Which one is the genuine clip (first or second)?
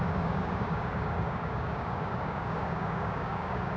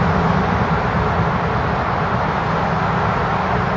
second